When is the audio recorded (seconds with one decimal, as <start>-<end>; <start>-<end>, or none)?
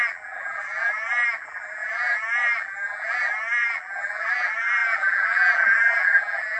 none